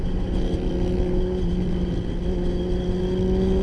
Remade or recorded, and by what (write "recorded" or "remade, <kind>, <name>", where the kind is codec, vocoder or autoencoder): recorded